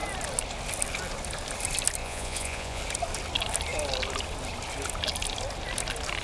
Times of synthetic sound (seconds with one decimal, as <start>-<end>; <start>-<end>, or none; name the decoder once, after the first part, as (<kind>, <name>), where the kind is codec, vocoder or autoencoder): 2.0-2.8 (vocoder, Vocos)